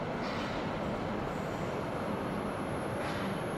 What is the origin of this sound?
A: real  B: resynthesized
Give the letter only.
A